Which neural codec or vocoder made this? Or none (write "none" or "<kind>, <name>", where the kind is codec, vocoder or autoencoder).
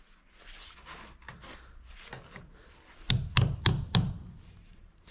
none